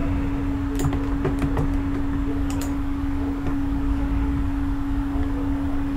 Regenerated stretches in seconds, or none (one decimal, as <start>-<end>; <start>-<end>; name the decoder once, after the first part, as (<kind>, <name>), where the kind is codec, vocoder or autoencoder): 2.3-6.0 (codec, DAC)